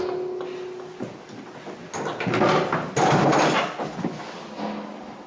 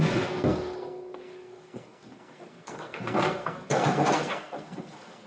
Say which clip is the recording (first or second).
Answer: first